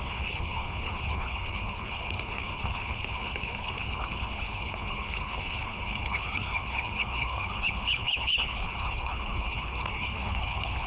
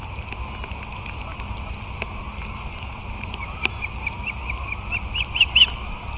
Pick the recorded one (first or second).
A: second